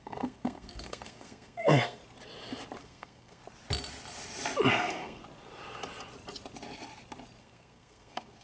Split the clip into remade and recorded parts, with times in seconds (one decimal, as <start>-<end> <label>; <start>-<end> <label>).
0.0-2.0 remade; 2.0-2.8 recorded; 2.8-3.4 remade; 3.4-4.7 recorded; 4.7-5.2 remade; 5.2-7.4 recorded; 7.4-8.4 remade